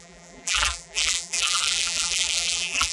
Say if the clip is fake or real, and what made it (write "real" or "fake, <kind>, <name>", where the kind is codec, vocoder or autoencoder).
fake, vocoder, BigVGAN v2